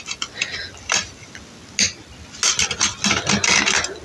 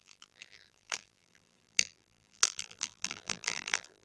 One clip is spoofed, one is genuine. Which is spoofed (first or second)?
second